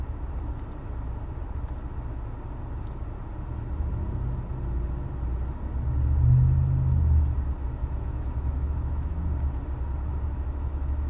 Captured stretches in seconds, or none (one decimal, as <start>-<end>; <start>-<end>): 0.0-7.8; 9.2-10.1